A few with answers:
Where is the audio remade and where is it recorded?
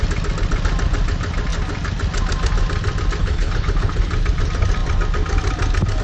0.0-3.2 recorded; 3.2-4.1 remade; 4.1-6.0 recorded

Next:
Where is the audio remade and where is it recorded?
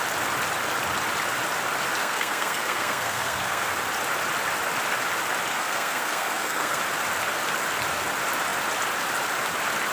0.0-2.0 recorded; 2.0-3.7 remade; 3.7-5.5 recorded; 5.5-6.8 remade; 6.8-9.9 recorded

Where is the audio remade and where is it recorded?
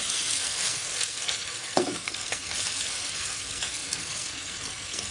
0.0-5.1 remade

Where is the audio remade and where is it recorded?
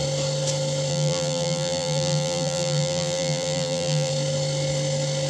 0.0-0.9 recorded; 0.9-4.1 remade; 4.1-5.3 recorded